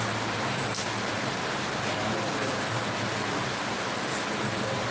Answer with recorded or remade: recorded